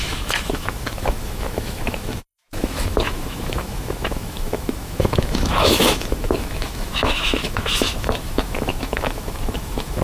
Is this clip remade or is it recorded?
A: remade